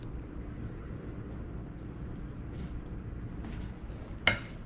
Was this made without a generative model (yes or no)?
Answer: yes